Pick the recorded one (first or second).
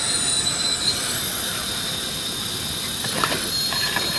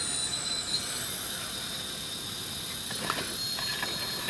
second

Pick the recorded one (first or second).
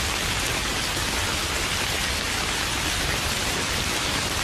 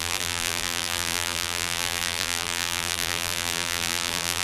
first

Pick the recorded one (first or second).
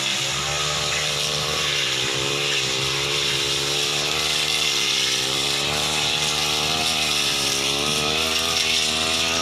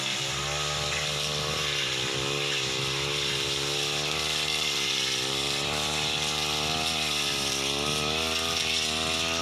first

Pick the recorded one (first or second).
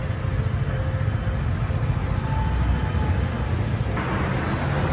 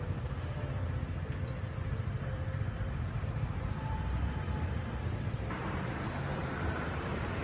first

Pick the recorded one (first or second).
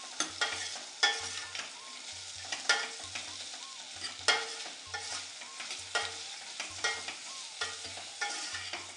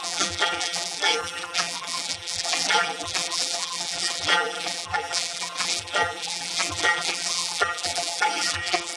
first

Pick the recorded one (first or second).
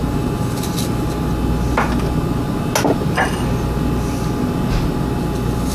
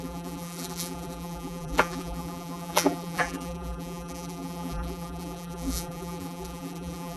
first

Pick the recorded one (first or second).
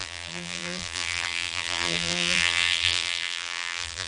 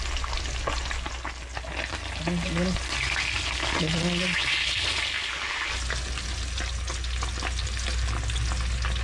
second